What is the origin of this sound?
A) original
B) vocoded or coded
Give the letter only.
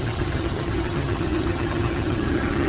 B